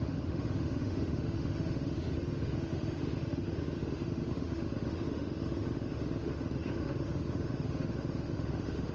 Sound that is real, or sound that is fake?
fake